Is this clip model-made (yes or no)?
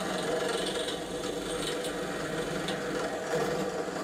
no